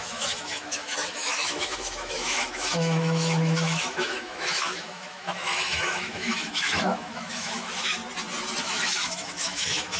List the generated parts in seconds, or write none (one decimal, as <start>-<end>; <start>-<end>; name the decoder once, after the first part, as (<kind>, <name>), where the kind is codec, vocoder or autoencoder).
0.0-8.0 (autoencoder, DAC-VAE); 8.6-10.0